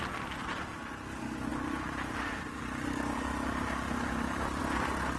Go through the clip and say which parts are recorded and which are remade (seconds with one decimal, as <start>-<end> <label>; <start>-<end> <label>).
0.0-1.5 recorded; 1.5-4.6 remade; 4.6-5.2 recorded